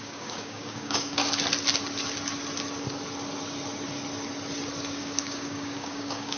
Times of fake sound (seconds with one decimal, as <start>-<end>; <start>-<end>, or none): 0.0-1.2; 4.9-6.4